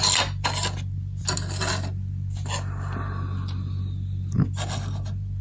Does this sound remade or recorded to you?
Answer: recorded